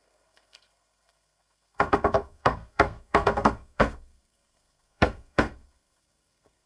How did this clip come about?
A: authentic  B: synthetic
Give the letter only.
B